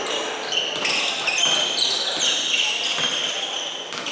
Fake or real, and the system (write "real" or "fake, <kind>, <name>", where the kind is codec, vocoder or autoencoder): real